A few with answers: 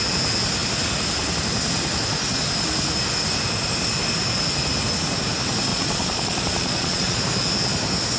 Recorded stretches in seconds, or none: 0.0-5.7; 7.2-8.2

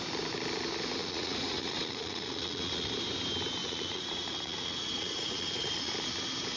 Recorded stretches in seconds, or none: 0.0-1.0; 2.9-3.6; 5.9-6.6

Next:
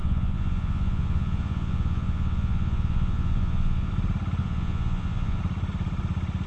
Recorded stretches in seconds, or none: 3.9-4.4; 5.4-6.5